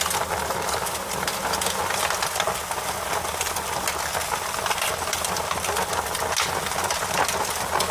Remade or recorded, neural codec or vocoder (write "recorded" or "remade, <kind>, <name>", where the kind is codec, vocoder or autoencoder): recorded